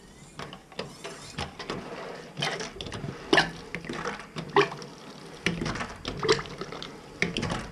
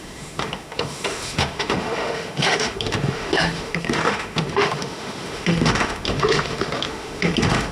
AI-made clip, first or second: second